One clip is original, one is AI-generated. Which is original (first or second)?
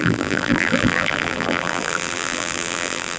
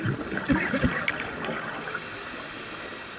second